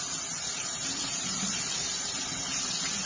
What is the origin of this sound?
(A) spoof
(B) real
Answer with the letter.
B